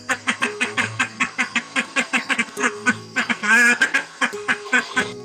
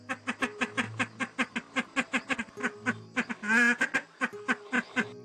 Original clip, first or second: second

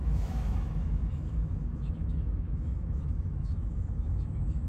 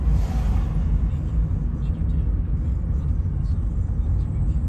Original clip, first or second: second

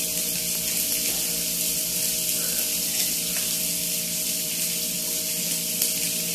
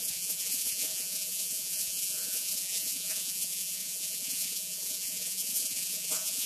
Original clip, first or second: first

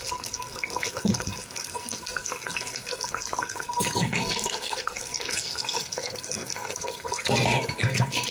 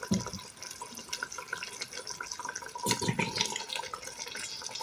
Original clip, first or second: second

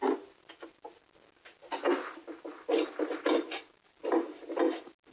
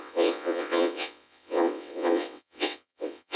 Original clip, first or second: first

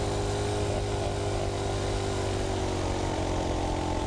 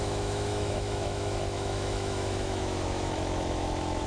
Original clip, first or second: first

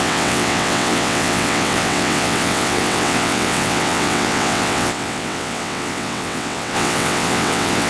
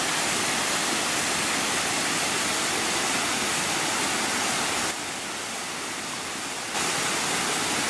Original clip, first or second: second